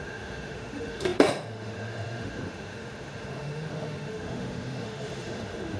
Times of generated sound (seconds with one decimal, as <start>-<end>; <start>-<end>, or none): 0.0-5.8